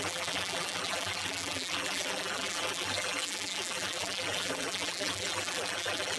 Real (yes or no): no